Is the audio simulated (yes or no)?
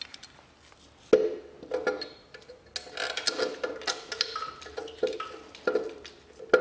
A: no